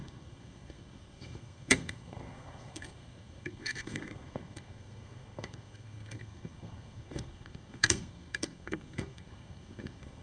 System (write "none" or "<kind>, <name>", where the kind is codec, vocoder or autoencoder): codec, SNAC